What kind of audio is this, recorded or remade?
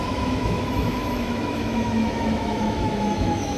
remade